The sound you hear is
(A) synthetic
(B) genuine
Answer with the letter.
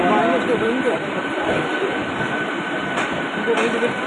B